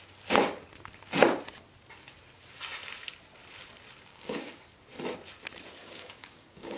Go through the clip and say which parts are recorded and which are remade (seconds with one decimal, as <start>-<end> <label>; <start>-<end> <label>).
0.0-4.1 recorded; 4.1-4.6 remade; 4.6-5.8 recorded; 5.8-6.8 remade